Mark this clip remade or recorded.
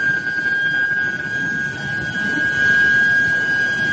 recorded